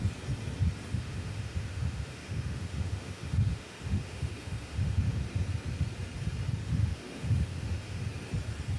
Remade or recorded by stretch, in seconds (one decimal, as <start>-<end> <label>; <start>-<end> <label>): 0.0-0.9 recorded; 0.9-5.2 remade; 5.2-6.6 recorded; 6.6-8.0 remade; 8.0-8.8 recorded